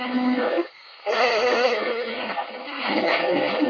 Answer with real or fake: fake